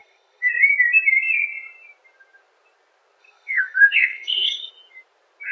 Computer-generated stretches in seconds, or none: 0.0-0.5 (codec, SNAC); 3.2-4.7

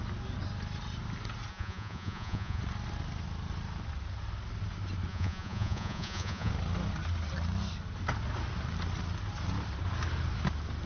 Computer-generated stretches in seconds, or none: 1.5-2.6 (vocoder, Vocos); 5.1-6.5

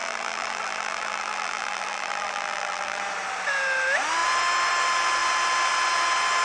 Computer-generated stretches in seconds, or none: 0.0-3.0 (vocoder, BigVGAN v2)

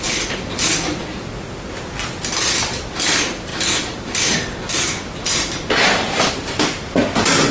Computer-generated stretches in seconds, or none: 0.0-3.5 (vocoder, BigVGAN v2); 6.3-7.5